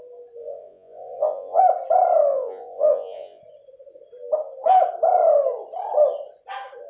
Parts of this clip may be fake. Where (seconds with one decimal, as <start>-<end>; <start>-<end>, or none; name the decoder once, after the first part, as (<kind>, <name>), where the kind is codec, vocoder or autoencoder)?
0.4-1.6 (vocoder, Vocos); 2.3-3.4